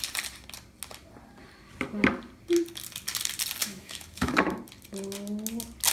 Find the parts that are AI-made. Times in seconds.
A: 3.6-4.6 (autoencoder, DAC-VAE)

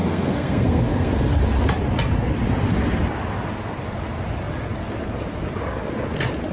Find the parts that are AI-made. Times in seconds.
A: 0.0-1.1 (codec, SNAC)